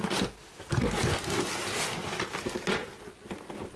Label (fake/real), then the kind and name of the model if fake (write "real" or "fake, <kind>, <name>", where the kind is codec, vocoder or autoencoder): real